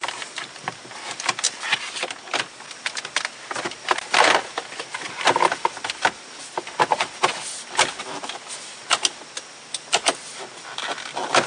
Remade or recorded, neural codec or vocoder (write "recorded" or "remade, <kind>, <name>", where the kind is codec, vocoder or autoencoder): recorded